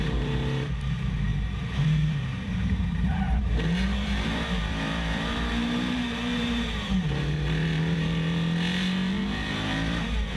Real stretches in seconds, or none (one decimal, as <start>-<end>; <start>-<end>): none